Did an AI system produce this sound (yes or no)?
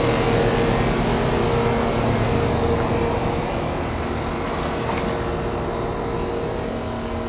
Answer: no